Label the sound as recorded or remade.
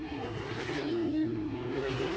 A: remade